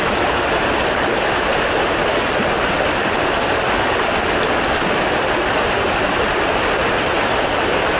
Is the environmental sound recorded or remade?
recorded